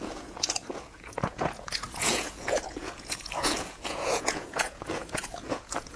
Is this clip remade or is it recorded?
remade